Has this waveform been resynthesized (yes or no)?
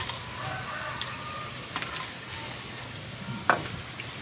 no